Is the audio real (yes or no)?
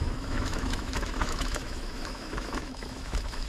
no